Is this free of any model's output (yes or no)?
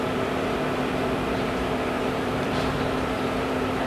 no